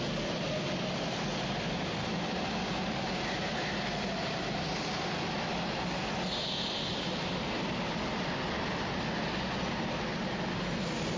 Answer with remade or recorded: recorded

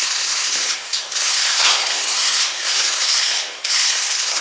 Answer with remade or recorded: remade